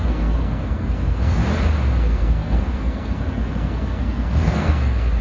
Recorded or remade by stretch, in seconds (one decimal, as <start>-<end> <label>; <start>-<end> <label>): 0.0-1.4 remade; 1.4-2.0 recorded; 2.0-5.2 remade